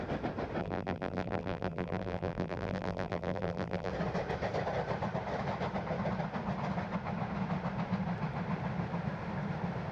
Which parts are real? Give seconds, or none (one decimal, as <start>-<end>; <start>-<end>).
0.0-0.6; 3.9-9.9